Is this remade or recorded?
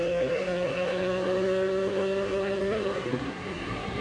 remade